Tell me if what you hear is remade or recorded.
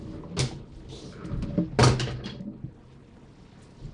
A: recorded